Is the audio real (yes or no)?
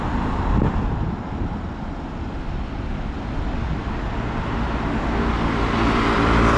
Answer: yes